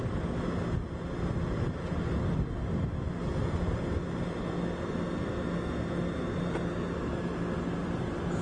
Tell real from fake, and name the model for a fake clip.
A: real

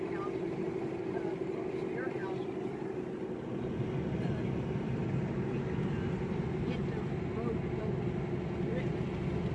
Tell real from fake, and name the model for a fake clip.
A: real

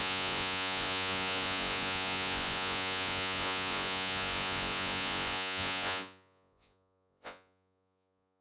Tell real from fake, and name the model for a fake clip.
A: fake, vocoder, Vocos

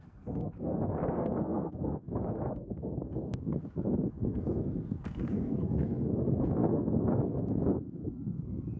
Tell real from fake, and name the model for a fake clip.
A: fake, codec, SNAC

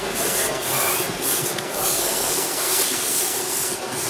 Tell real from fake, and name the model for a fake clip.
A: fake, codec, SNAC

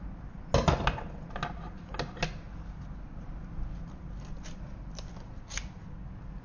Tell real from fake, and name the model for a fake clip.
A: real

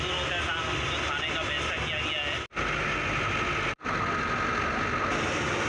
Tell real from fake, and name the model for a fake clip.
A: real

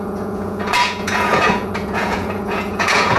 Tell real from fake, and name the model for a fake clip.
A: fake, vocoder, Vocos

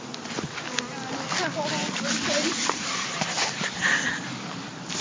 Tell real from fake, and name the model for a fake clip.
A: fake, vocoder, BigVGAN v2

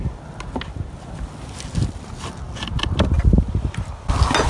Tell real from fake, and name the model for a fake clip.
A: real